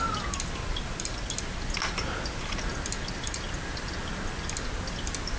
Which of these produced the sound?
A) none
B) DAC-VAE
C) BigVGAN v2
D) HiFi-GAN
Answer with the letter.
A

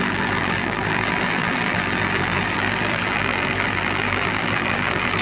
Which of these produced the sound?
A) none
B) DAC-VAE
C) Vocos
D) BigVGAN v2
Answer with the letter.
D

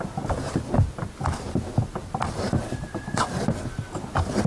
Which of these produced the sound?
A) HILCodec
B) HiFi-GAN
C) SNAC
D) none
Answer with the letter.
D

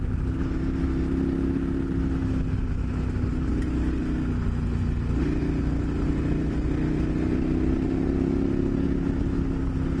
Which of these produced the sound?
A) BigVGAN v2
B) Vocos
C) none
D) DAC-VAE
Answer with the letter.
C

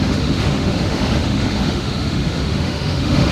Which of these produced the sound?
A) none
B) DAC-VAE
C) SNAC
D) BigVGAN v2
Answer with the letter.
B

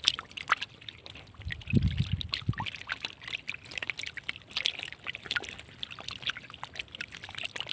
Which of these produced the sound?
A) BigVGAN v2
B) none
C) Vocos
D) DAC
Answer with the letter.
B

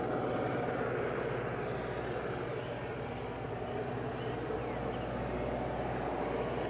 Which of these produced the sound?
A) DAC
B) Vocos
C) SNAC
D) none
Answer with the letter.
D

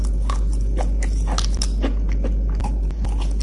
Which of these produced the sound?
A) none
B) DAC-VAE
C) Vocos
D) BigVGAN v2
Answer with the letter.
A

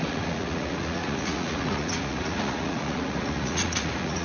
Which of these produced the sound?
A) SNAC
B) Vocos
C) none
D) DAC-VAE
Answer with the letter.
B